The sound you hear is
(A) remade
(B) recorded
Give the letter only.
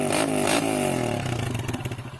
B